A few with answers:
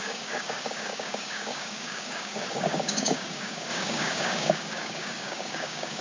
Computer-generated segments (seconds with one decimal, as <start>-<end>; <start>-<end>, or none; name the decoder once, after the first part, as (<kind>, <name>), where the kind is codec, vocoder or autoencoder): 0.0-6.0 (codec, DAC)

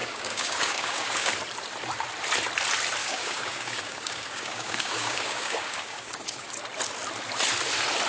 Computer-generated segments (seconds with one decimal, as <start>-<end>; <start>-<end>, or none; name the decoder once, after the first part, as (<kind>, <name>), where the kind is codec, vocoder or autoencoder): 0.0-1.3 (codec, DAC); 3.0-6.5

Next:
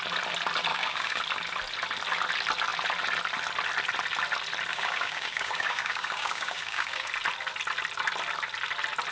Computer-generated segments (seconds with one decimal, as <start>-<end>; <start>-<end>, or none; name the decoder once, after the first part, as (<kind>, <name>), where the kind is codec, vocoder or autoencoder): 0.7-1.2 (codec, DAC); 4.7-7.1